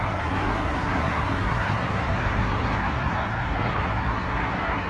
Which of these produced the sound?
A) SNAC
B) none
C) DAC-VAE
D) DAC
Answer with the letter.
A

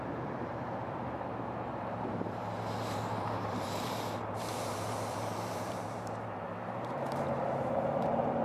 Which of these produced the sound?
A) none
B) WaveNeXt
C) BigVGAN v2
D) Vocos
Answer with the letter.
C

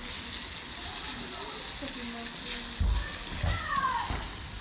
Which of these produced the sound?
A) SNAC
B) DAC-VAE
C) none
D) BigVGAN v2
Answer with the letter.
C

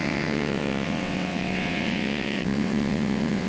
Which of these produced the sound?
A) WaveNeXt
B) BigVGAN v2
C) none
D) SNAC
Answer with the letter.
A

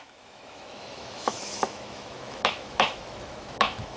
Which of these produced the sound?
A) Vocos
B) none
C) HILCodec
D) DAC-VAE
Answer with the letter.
D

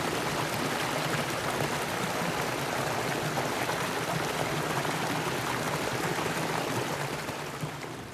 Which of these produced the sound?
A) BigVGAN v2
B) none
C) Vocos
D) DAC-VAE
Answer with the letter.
B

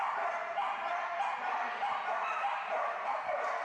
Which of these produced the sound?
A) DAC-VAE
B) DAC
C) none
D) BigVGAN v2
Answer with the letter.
D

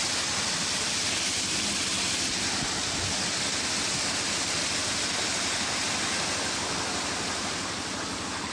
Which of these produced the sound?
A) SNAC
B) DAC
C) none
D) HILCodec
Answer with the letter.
C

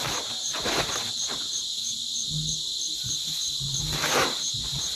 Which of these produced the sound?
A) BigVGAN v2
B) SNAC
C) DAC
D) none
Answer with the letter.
D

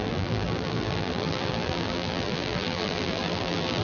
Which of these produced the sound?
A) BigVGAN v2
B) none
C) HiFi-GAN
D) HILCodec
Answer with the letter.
A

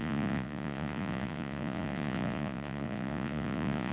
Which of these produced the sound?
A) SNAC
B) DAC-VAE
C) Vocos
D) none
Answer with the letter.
C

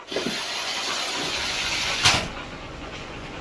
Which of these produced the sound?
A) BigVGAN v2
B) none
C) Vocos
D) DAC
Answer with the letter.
C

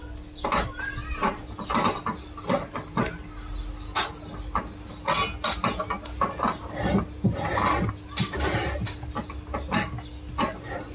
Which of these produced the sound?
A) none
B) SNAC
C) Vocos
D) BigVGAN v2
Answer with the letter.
A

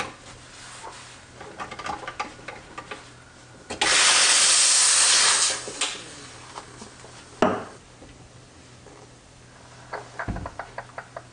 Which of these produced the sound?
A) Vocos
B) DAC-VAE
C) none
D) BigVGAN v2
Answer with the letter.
C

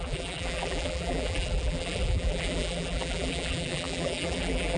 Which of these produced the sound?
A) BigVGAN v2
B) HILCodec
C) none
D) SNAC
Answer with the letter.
A